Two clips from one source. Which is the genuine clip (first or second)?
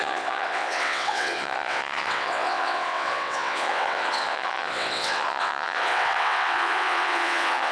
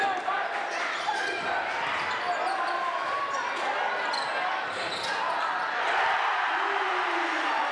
second